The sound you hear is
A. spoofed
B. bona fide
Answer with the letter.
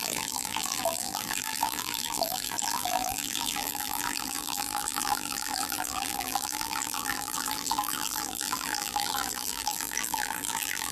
A